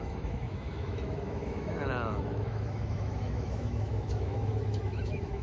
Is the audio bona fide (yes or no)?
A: no